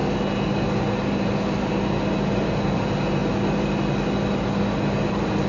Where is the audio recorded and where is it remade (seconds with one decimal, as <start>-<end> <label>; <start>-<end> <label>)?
0.0-5.5 recorded